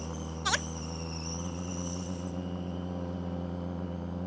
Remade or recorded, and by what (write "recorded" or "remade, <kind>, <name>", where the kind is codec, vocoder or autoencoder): recorded